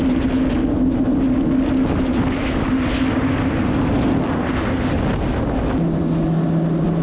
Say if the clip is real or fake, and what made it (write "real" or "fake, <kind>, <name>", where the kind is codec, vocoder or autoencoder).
real